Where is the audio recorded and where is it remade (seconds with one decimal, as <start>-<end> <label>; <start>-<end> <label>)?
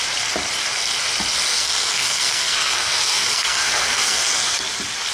0.0-1.5 recorded; 1.5-4.6 remade; 4.6-5.1 recorded